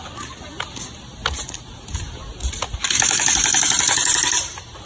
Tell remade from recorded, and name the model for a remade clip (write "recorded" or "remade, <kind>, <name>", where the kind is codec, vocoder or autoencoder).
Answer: recorded